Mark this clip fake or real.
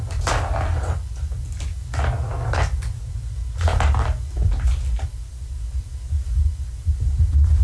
real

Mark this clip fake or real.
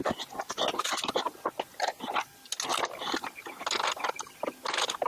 real